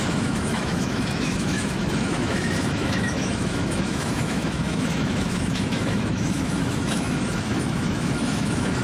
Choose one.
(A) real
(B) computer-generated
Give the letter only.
B